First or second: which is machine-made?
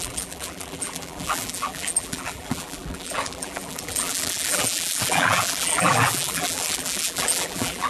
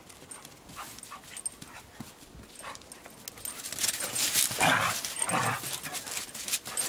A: first